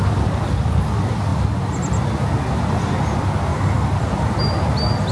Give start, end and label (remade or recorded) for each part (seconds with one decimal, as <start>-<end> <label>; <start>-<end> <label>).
0.0-1.3 recorded; 1.3-2.0 remade; 2.0-3.5 recorded; 3.5-4.4 remade; 4.4-5.1 recorded